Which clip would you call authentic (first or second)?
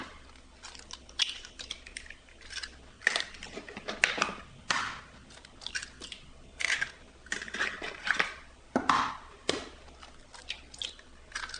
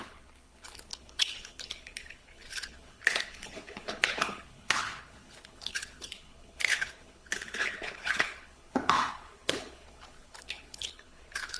first